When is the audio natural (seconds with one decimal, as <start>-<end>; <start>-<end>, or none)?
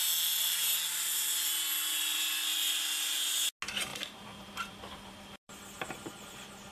0.0-3.9; 5.9-6.7